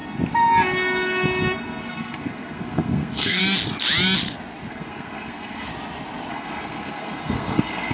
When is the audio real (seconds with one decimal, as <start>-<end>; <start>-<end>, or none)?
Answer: 0.0-1.9; 3.4-4.7; 5.7-6.3